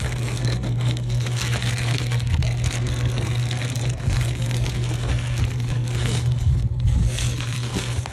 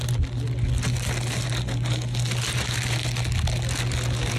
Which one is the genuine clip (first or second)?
second